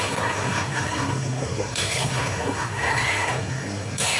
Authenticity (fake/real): fake